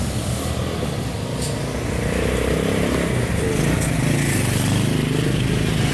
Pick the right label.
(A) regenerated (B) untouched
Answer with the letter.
B